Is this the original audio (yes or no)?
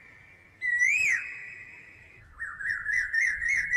yes